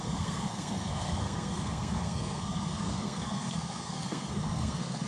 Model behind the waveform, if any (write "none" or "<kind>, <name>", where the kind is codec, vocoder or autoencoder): codec, SNAC